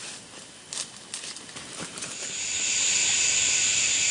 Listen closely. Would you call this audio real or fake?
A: real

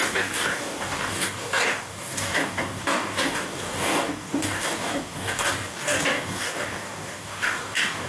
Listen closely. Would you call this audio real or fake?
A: fake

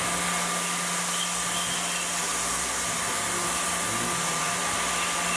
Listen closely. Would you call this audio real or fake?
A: real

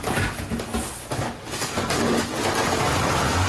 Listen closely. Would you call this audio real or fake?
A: real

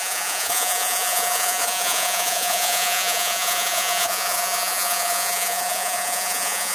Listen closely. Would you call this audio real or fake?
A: fake